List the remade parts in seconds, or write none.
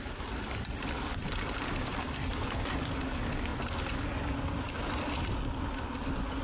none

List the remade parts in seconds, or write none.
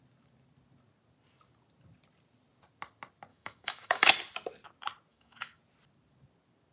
3.3-4.1 (autoencoder, DAC-VAE); 5.1-5.6